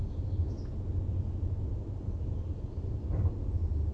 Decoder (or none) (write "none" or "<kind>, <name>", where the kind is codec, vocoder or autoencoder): none